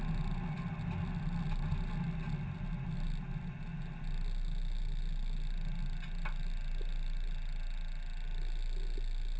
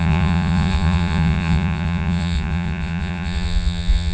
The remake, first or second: second